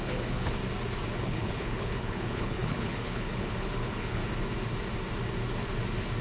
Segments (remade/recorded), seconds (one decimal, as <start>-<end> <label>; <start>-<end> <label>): 0.0-0.6 remade; 0.6-1.1 recorded; 1.1-4.2 remade; 4.2-6.2 recorded

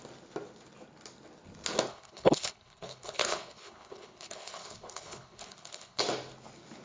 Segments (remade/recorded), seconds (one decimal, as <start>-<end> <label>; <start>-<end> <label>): 0.0-1.9 recorded; 1.9-6.0 remade; 6.0-6.8 recorded

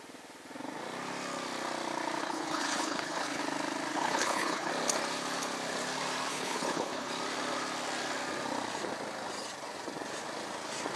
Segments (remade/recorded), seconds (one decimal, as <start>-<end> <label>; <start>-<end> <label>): 0.0-2.2 recorded; 2.2-3.4 remade; 3.4-3.9 recorded; 3.9-4.7 remade; 4.7-6.3 recorded; 6.3-7.1 remade; 7.1-11.0 recorded

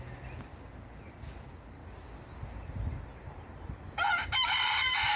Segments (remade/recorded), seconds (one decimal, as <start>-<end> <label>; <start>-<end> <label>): 0.0-5.2 recorded

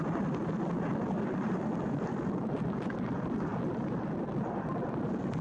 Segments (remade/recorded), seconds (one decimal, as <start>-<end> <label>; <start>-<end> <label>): 0.0-5.4 recorded

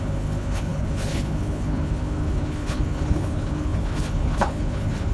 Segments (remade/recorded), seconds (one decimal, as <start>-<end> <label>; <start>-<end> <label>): 0.0-5.1 remade